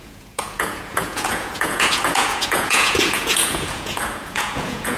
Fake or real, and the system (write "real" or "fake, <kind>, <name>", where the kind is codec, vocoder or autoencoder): fake, vocoder, Vocos